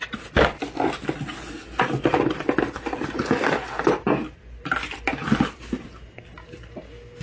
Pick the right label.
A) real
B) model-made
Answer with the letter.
A